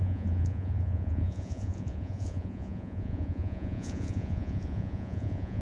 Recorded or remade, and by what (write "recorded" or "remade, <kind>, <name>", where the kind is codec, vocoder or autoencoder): remade, vocoder, Vocos